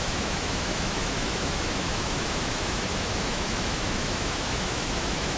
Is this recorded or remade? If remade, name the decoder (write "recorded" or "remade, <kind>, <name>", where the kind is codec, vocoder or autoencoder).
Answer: remade, autoencoder, DAC-VAE